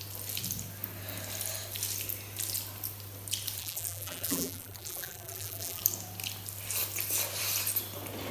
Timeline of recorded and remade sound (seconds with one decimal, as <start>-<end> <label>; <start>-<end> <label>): 0.0-3.6 recorded; 3.6-5.8 remade; 5.8-8.3 recorded